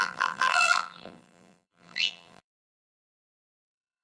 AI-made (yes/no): yes